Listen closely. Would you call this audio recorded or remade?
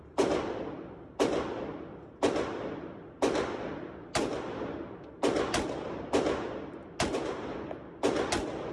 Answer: recorded